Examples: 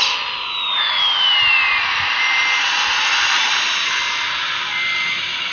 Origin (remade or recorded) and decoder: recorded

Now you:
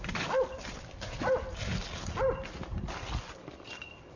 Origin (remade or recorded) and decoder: recorded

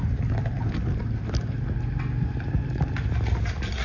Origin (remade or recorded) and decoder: recorded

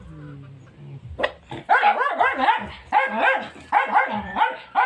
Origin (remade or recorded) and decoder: recorded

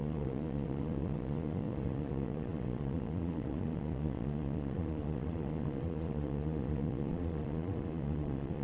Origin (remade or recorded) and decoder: remade, vocoder, Vocos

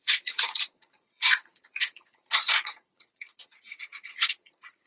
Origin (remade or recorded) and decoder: remade, vocoder, Vocos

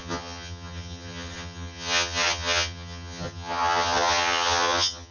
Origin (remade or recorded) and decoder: remade, vocoder, HiFi-GAN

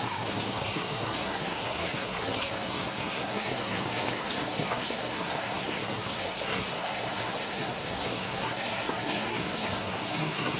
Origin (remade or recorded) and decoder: remade, codec, SNAC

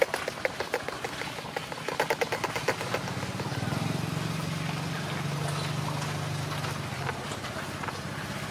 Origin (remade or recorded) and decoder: recorded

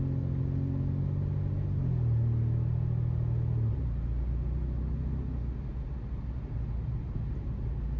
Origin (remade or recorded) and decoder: recorded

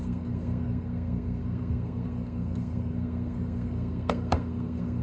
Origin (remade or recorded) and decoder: remade, codec, SNAC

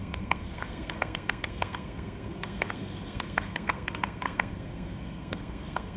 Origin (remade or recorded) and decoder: remade, codec, SNAC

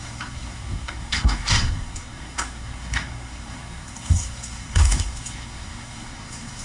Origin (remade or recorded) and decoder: remade, codec, SNAC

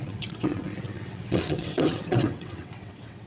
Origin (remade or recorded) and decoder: remade, vocoder, WaveNeXt